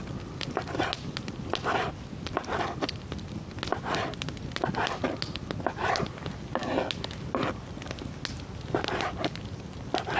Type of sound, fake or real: real